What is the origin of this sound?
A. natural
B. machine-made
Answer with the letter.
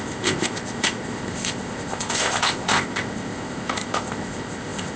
B